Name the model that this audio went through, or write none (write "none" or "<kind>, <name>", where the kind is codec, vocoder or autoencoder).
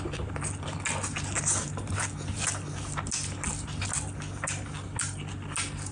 none